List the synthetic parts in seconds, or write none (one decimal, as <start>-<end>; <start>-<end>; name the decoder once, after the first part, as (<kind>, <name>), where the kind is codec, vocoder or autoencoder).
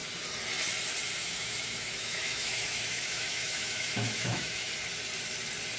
1.2-4.7 (autoencoder, DAC-VAE)